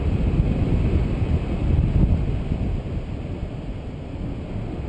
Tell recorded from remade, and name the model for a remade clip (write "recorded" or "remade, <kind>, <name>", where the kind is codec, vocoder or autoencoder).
recorded